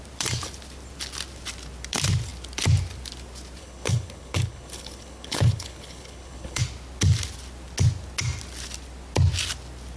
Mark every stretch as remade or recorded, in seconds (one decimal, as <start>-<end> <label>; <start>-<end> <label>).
0.0-3.6 recorded; 3.6-6.6 remade; 6.6-10.0 recorded